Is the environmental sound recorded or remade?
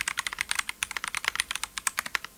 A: recorded